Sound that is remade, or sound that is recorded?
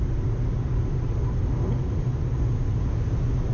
recorded